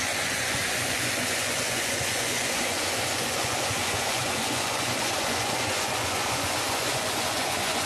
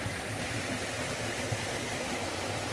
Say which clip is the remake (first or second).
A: first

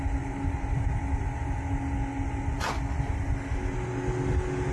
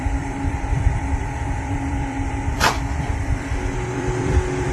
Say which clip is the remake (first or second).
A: second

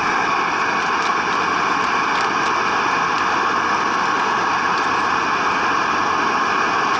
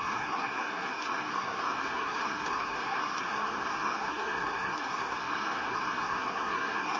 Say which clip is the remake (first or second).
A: second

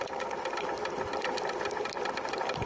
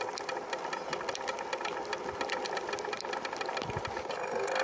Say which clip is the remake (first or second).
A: first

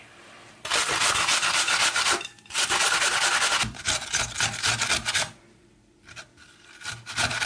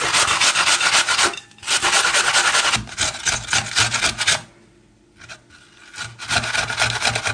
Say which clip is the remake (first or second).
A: first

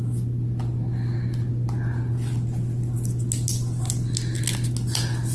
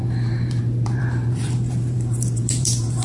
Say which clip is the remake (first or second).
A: second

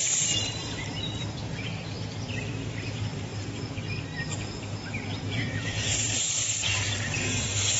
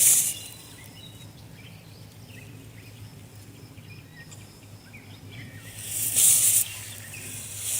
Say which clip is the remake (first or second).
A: first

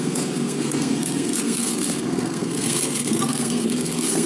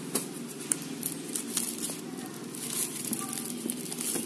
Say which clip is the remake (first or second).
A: first